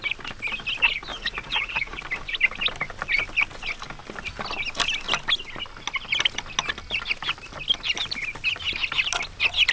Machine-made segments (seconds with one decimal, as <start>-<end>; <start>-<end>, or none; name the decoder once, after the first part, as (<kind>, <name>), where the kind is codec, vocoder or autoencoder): 1.1-2.0 (vocoder, Vocos)

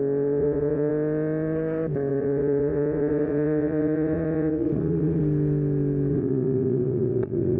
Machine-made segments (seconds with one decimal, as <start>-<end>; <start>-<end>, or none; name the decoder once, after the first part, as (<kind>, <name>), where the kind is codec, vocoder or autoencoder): 0.4-0.9 (vocoder, Vocos); 2.1-5.2; 6.1-7.6

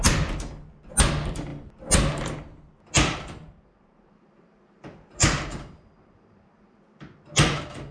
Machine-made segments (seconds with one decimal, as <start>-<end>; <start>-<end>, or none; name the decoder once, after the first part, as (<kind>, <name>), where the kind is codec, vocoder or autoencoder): 3.4-7.0 (vocoder, BigVGAN v2)

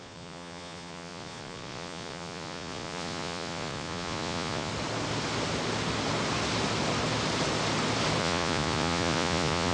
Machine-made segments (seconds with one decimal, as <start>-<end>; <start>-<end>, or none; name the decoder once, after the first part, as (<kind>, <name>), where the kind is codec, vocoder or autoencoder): 0.0-4.7 (vocoder, Vocos); 8.2-9.7

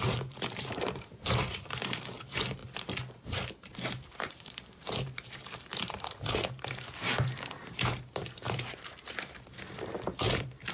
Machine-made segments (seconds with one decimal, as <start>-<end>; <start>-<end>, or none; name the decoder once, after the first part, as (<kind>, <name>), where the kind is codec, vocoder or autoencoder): 0.0-2.6 (vocoder, BigVGAN v2); 3.1-10.7